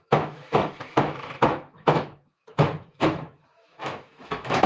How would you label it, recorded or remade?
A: remade